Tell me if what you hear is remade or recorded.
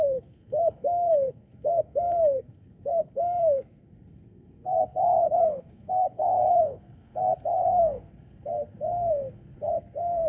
remade